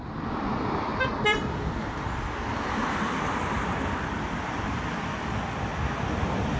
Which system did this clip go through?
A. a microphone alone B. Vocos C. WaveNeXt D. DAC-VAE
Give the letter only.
A